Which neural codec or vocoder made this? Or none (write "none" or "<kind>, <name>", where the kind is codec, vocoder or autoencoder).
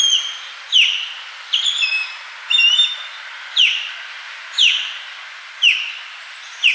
none